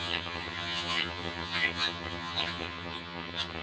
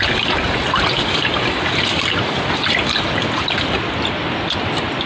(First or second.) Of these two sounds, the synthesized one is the first